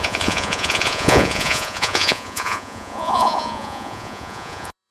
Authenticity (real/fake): fake